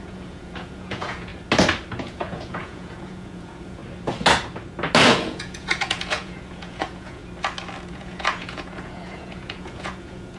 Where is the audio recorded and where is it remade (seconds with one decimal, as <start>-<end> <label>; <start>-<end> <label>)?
0.0-1.3 remade; 1.3-2.0 recorded; 2.0-3.8 remade; 3.8-5.1 recorded; 5.1-7.2 remade; 7.2-7.9 recorded; 7.9-10.4 remade

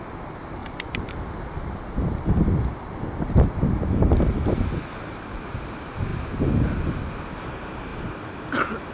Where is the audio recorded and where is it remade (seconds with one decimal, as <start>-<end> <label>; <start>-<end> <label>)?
0.0-0.6 recorded; 0.6-1.1 remade; 1.1-8.9 recorded